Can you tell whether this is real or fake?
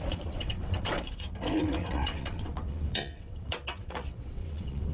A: fake